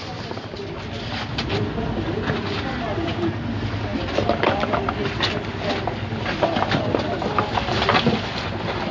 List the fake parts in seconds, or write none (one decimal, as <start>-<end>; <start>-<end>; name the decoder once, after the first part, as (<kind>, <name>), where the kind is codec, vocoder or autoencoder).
none